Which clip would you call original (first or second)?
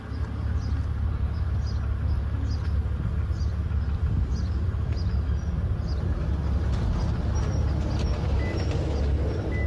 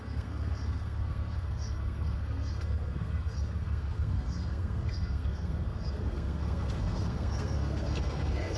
first